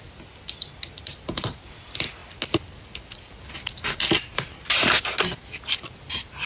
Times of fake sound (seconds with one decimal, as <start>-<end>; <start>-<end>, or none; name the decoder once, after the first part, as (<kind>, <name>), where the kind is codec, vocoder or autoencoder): none